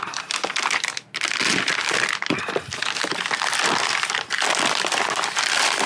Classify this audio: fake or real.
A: real